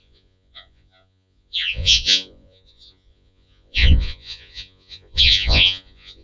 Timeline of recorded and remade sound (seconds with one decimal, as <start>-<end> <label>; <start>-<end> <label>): 0.0-6.2 remade